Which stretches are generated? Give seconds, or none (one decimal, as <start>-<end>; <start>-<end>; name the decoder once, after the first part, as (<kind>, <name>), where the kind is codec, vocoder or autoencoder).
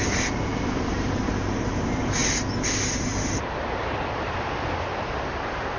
0.0-2.2 (vocoder, BigVGAN v2); 2.8-3.9; 5.0-5.8